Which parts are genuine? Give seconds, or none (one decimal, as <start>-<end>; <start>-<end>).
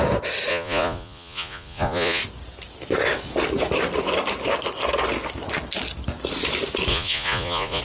0.0-0.5; 2.2-6.9